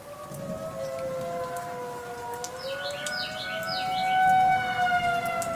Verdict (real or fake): real